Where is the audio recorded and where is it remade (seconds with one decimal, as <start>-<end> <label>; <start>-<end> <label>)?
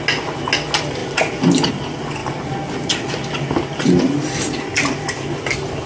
0.0-5.9 recorded